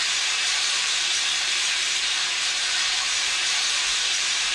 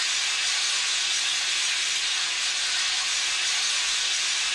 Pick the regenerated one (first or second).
first